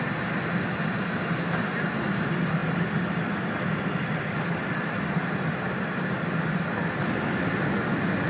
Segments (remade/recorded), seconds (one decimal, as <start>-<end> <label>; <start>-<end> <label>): 0.0-8.3 recorded